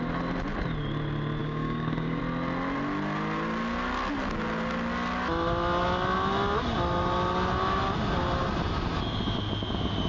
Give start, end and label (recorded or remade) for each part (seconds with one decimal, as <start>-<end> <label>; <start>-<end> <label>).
0.0-1.4 recorded; 1.4-2.2 remade; 2.2-10.1 recorded